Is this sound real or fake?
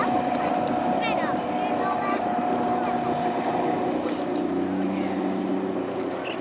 real